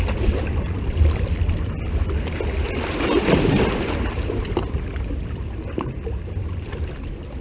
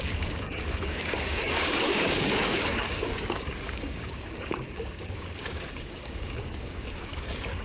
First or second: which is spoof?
second